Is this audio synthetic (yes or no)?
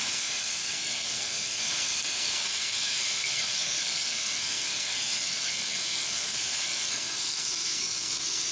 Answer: yes